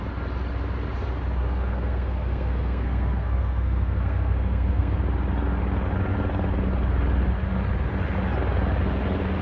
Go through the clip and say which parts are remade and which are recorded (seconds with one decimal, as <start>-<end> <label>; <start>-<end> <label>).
0.0-1.4 recorded; 1.4-5.0 remade; 5.0-9.4 recorded